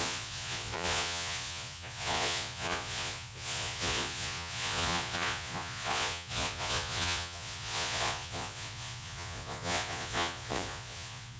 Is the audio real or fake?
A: fake